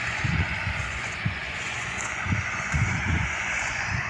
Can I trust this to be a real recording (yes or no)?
no